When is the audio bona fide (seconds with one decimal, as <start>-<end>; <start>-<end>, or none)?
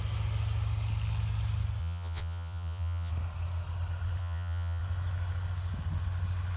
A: 0.0-1.8; 3.1-4.2; 4.8-6.6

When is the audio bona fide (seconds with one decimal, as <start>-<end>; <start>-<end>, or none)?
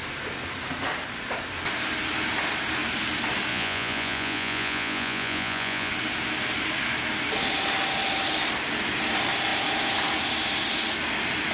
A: 0.0-3.5; 5.9-11.5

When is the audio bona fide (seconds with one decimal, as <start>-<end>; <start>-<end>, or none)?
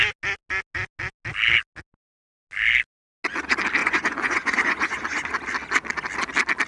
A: 0.0-3.8; 5.3-6.7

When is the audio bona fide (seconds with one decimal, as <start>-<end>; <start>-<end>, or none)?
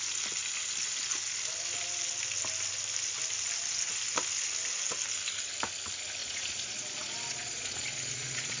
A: 0.0-6.2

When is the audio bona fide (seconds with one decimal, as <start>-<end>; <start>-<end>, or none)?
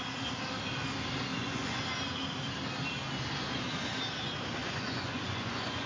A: 0.0-1.3; 1.8-4.6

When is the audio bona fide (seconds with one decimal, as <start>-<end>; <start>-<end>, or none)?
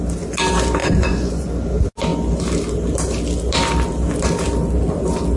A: 0.0-0.8; 1.5-5.4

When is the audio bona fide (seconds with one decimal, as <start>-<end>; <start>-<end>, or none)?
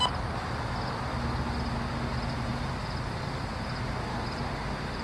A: 0.0-5.0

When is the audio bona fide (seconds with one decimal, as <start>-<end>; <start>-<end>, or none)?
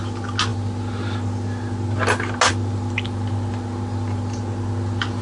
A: 0.0-5.2